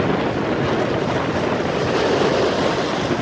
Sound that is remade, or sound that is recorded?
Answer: recorded